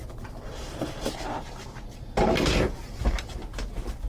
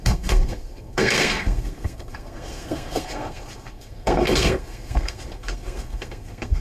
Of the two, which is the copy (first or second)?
second